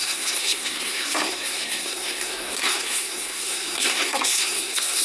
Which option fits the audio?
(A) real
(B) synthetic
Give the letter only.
B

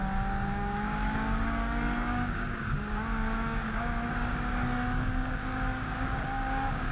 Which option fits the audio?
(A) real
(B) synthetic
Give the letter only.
B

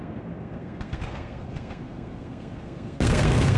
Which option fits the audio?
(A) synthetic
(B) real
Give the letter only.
A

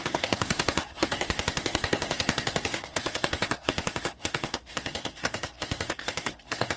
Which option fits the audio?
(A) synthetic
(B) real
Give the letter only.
A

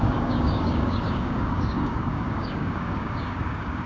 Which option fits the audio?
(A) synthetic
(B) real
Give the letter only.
A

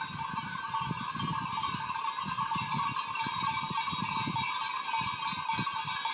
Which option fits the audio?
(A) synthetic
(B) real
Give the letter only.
B